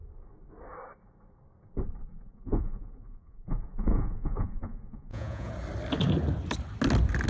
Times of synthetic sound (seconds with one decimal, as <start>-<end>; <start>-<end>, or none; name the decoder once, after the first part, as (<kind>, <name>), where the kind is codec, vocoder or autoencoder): 2.0-5.5 (vocoder, Vocos)